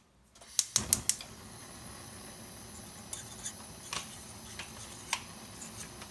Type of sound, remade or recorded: recorded